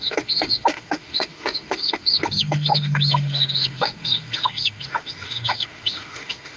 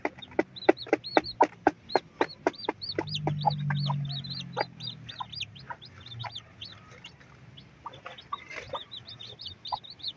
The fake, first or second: first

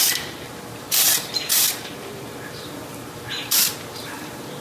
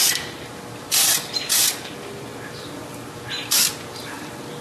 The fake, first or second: first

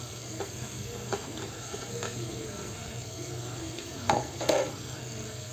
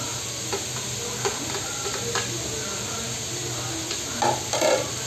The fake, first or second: first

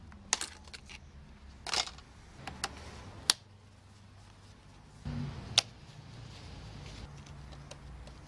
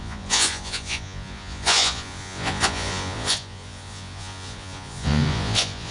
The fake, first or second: second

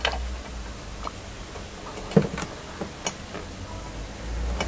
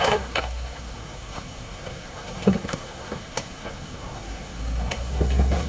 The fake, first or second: second